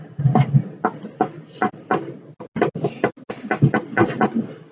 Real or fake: real